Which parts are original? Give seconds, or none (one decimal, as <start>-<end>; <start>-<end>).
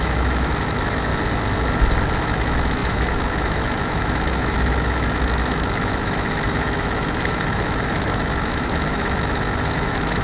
1.1-2.2